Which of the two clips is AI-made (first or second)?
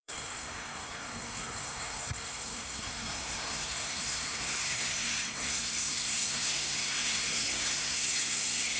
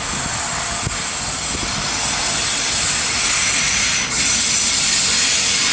first